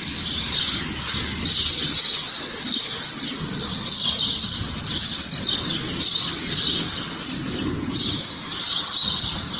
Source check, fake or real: real